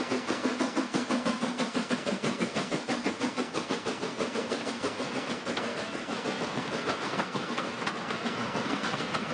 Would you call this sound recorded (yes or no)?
no